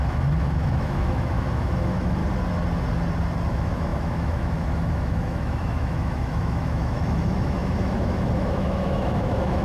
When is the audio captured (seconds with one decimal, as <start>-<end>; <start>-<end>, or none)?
2.2-3.5